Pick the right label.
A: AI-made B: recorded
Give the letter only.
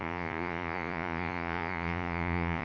A